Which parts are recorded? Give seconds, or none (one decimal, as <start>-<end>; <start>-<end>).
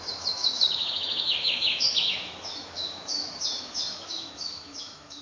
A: none